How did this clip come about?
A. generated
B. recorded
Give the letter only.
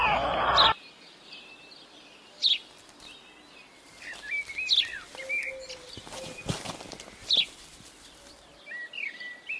B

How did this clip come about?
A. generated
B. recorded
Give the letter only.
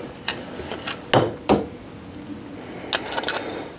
B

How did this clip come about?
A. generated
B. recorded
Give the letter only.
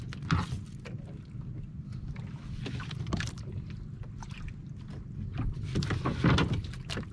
B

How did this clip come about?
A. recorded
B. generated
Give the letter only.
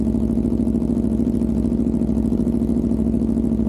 A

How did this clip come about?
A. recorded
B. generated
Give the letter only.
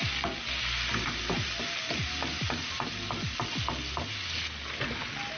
A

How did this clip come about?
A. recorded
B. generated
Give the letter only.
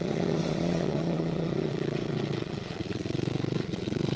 B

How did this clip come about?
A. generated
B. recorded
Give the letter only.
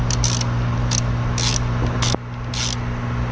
B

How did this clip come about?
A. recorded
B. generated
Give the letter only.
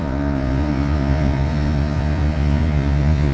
B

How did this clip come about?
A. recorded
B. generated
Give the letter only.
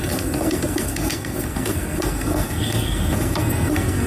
B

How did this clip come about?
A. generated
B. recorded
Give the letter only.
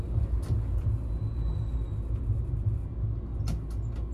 B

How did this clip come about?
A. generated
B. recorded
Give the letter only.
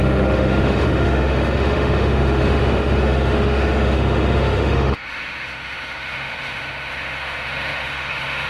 A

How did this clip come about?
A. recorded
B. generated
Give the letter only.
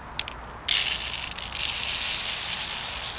A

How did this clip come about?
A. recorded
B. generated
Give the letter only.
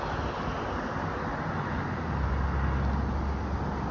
A